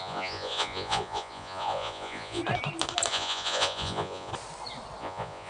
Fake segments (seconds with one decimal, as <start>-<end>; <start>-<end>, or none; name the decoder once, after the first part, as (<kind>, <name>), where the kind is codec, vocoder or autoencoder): 0.0-2.4 (vocoder, Vocos); 3.1-4.3; 5.0-5.5